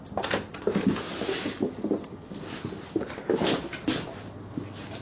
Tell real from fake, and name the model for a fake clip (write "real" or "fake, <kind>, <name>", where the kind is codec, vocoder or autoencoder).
real